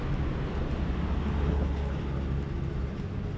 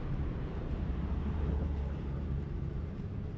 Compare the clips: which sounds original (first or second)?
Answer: first